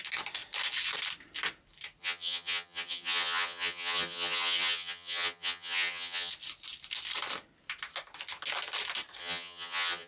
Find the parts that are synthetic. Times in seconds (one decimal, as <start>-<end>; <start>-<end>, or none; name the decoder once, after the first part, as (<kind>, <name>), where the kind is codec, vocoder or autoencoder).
2.0-6.3 (vocoder, HiFi-GAN); 9.2-10.1